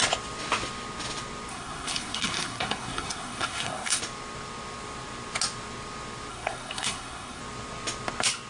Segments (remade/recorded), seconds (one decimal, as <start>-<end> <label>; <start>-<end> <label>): 0.0-1.5 recorded; 1.5-4.0 remade; 4.0-6.3 recorded; 6.3-7.4 remade; 7.4-8.5 recorded